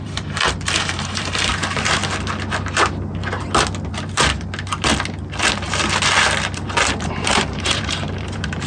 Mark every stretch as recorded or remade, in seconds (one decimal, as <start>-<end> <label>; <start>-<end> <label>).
0.0-2.0 remade; 2.0-7.0 recorded; 7.0-8.7 remade